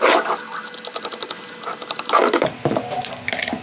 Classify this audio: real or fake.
real